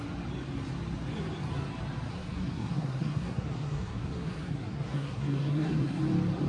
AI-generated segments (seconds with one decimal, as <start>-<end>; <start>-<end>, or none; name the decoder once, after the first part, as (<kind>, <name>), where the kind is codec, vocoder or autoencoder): 2.1-6.0 (codec, SNAC)